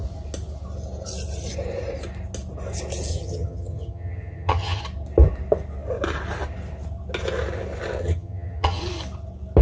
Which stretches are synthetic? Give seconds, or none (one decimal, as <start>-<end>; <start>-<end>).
3.1-4.8; 8.0-8.8